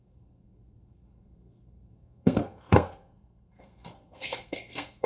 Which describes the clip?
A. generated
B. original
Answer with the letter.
A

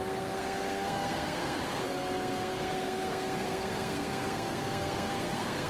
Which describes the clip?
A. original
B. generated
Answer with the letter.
B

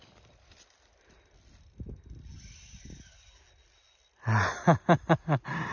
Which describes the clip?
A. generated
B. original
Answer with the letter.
B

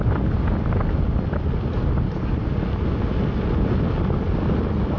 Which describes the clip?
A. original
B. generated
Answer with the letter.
A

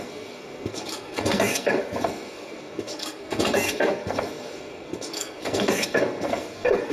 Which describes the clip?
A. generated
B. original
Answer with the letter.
A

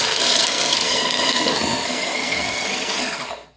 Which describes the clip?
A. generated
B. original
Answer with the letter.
A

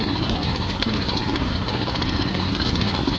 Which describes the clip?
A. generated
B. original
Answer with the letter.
A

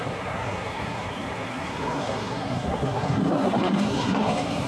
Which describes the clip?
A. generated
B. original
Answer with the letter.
A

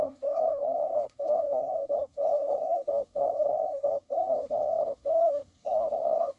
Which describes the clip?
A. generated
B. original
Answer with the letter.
A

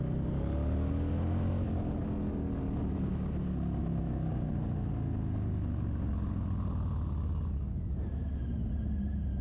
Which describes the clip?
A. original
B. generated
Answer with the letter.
A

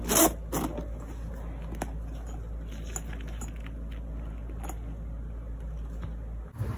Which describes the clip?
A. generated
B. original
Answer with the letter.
B